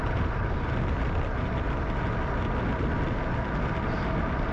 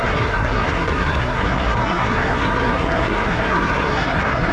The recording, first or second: first